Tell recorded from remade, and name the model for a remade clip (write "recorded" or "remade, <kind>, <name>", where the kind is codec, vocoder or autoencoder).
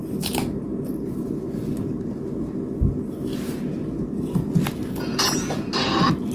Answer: recorded